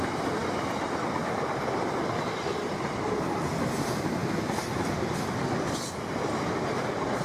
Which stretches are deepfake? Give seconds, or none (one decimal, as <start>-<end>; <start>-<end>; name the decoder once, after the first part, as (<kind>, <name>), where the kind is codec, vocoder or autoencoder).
none